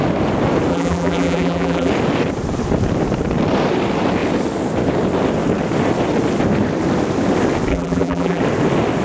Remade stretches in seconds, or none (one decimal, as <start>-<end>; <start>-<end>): 0.7-1.9; 7.7-8.4